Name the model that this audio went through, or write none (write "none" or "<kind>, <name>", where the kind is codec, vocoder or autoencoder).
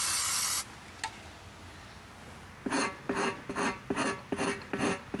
none